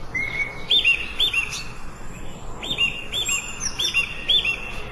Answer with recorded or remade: recorded